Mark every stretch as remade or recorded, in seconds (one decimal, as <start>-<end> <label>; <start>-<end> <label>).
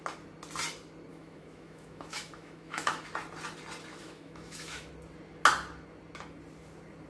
0.0-1.1 recorded; 1.1-3.0 remade; 3.0-3.9 recorded; 3.9-4.9 remade; 4.9-7.1 recorded